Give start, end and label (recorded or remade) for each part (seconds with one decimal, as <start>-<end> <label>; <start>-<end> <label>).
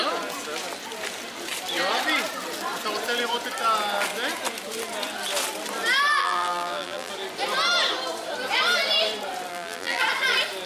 0.0-6.2 recorded; 6.2-7.1 remade; 7.1-9.5 recorded; 9.5-10.0 remade; 10.0-10.7 recorded